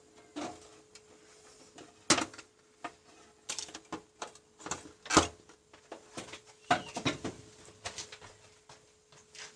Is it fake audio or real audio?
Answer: real